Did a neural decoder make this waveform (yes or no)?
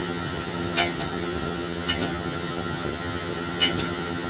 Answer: yes